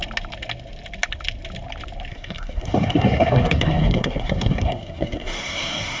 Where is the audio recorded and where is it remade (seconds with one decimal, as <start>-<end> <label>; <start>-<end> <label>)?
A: 0.0-2.1 recorded; 2.1-6.0 remade